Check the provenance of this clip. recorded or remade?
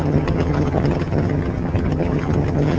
remade